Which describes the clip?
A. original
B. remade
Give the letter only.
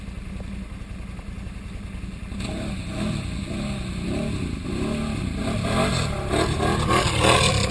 A